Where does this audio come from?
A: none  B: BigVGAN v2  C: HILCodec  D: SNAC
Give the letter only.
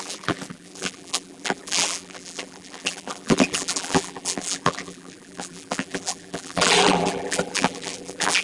B